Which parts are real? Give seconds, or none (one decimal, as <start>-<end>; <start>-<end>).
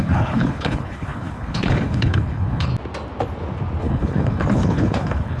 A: 2.7-3.8